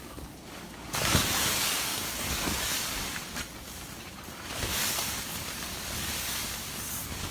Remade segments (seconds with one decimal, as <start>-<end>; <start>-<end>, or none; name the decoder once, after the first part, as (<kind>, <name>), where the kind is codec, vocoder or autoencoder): 0.0-7.3 (codec, DAC)